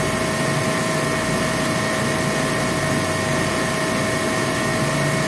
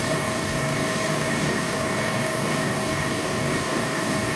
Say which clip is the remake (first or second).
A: second